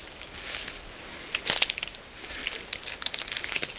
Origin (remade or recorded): recorded